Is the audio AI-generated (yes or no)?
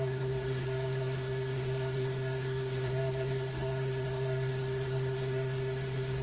yes